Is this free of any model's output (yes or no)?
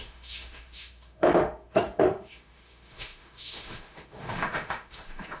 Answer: no